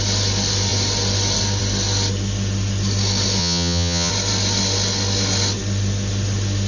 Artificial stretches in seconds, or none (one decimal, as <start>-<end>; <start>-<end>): 3.4-4.1